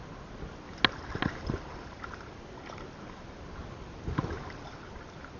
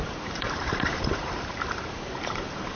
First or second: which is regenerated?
second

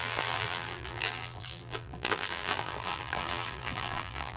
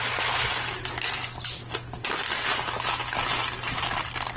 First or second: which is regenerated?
first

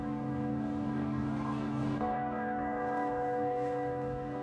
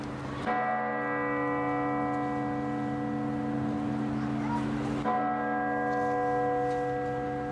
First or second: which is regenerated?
first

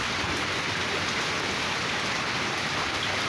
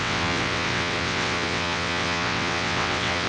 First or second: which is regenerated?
second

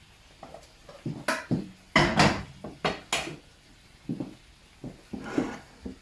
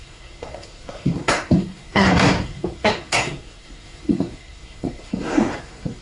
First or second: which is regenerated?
second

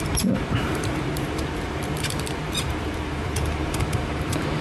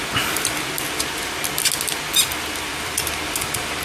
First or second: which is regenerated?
first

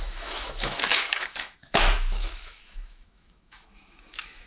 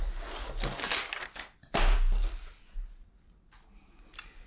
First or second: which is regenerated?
first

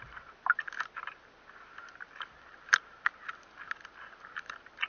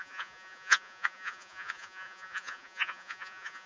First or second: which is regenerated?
second